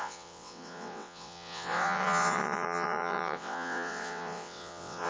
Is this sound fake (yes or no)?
yes